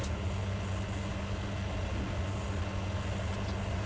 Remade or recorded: recorded